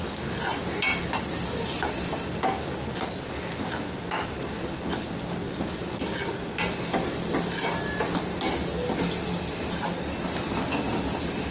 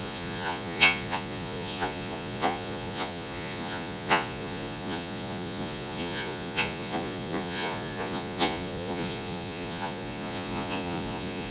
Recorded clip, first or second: first